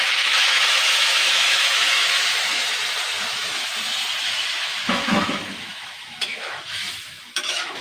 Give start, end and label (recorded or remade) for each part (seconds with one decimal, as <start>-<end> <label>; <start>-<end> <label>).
0.0-2.6 remade; 2.6-3.2 recorded; 3.2-3.7 remade; 3.7-4.2 recorded; 4.2-7.8 remade